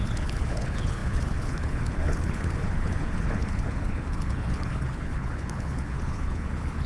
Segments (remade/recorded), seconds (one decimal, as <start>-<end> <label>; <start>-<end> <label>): 0.0-6.9 remade